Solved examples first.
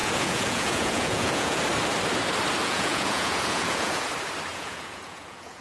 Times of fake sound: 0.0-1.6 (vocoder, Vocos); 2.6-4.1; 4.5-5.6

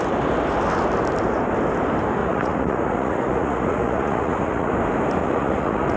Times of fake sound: 2.2-4.7 (vocoder, Vocos); 5.2-6.0

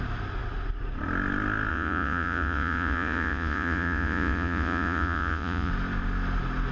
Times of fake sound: 1.7-5.7 (vocoder, Vocos)

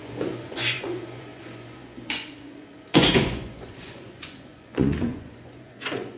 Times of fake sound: 0.0-6.2 (vocoder, Vocos)

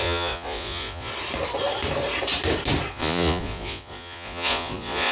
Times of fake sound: 0.0-1.1 (vocoder, Vocos); 2.9-5.1

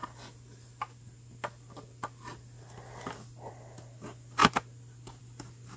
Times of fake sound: none